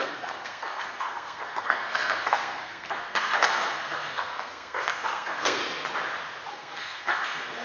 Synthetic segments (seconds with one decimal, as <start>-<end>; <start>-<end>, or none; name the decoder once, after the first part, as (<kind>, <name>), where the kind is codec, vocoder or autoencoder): 0.0-5.6 (codec, SNAC); 6.5-7.6